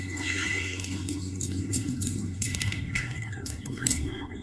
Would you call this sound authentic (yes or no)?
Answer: no